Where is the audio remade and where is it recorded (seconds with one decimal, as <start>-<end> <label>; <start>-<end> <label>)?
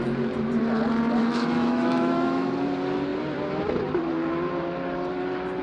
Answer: 0.0-1.2 recorded; 1.2-2.5 remade; 2.5-5.6 recorded